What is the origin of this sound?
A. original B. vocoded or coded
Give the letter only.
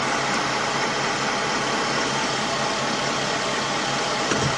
A